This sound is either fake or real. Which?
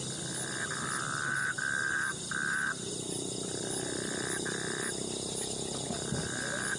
real